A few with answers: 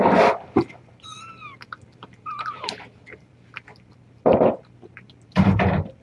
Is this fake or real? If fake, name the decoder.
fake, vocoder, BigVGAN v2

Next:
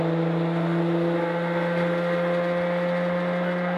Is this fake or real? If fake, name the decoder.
real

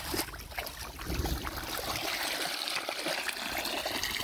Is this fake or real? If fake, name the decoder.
real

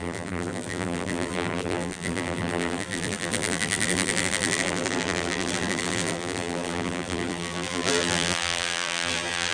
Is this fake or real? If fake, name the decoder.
fake, vocoder, BigVGAN v2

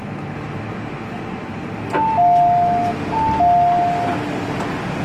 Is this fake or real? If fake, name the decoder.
real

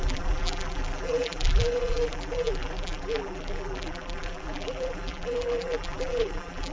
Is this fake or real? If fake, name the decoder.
fake, vocoder, BigVGAN v2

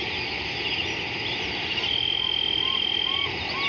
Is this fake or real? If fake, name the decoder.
real